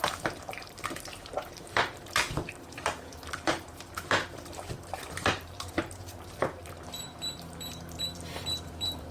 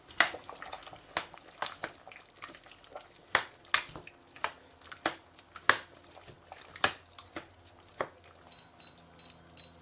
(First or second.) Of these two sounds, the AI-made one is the first